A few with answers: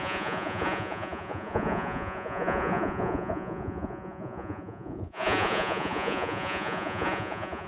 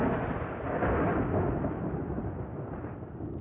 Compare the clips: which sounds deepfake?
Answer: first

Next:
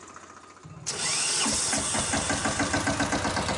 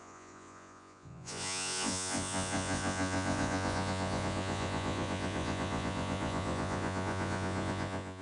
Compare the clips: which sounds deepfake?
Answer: second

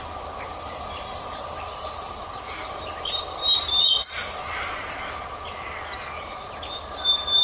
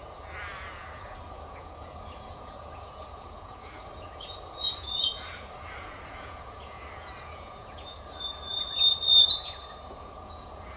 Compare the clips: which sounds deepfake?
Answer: second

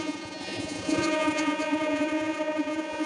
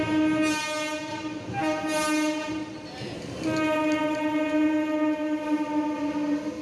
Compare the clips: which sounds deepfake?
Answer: first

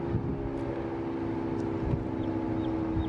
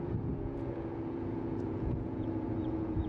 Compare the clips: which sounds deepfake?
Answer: second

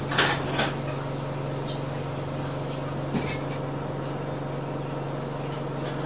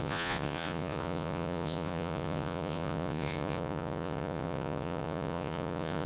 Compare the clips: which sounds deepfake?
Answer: second